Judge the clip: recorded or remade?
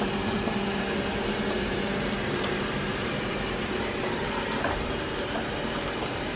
remade